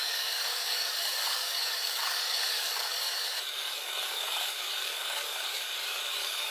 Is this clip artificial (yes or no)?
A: yes